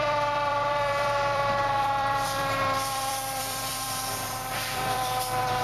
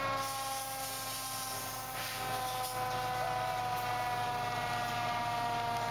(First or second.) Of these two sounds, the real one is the second